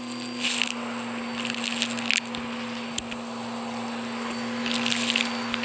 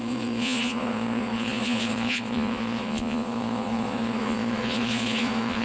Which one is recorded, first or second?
first